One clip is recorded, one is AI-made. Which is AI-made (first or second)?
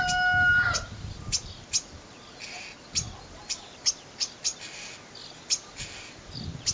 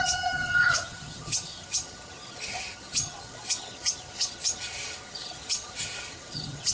second